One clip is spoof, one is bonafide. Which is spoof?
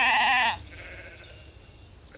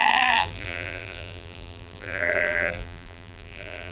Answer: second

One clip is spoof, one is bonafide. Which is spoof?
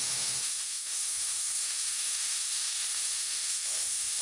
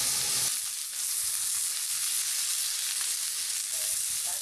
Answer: first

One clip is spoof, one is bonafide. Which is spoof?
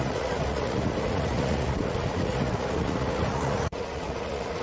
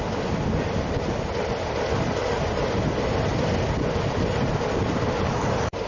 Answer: first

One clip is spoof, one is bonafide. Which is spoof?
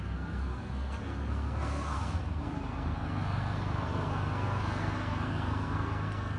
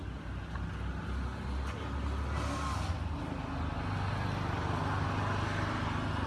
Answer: first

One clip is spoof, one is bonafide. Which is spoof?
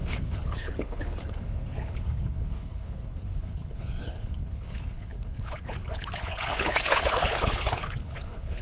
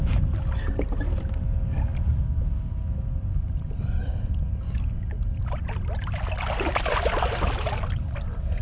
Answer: first